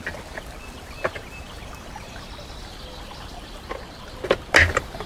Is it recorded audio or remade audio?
recorded